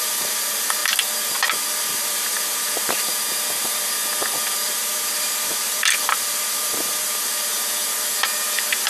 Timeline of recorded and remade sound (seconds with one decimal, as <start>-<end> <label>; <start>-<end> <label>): 0.0-0.8 remade; 0.8-1.8 recorded; 1.8-3.1 remade; 3.1-3.6 recorded; 3.6-4.0 remade; 4.0-4.6 recorded; 4.6-7.5 remade; 7.5-8.9 recorded